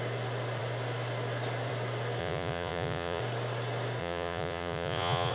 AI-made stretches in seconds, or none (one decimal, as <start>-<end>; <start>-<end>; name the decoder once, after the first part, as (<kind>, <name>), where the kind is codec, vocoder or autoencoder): 2.2-3.2 (vocoder, Vocos); 4.0-5.3